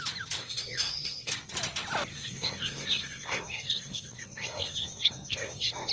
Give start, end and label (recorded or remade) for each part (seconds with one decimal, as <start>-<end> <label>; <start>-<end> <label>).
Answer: 0.0-0.4 recorded; 0.4-1.3 remade; 1.3-2.1 recorded; 2.1-5.9 remade